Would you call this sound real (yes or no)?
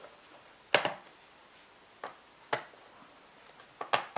yes